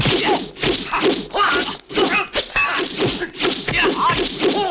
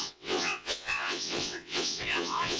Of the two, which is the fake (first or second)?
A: second